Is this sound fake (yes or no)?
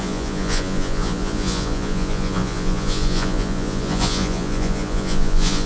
yes